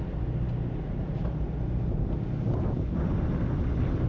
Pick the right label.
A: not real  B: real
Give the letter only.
B